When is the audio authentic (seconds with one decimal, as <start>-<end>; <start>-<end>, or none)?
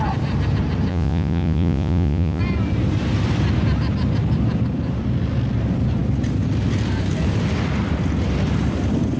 0.0-0.9; 2.4-9.2